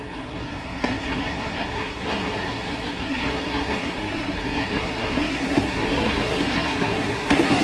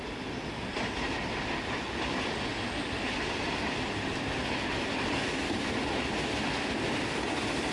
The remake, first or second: first